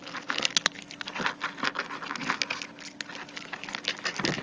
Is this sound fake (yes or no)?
no